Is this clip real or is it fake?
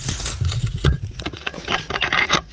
fake